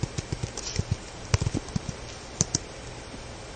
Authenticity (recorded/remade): recorded